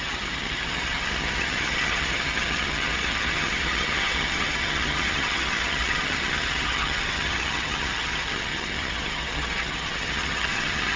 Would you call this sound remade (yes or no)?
yes